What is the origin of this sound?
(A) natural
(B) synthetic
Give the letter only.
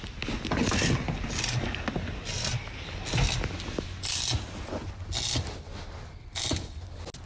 A